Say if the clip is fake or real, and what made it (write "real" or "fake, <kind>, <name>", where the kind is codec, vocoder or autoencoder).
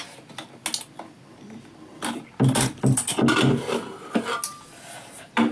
real